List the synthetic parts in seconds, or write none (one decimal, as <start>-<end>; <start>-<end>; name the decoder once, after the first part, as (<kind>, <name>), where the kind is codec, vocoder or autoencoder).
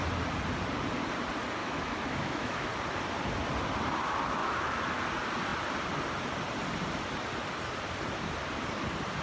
1.6-2.7 (autoencoder, DAC-VAE); 4.4-5.0